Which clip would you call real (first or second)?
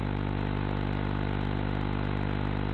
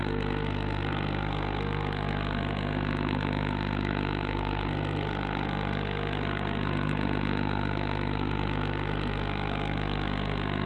first